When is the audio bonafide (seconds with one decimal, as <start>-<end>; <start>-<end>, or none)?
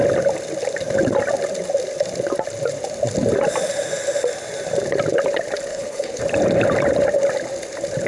0.0-5.7; 6.2-8.1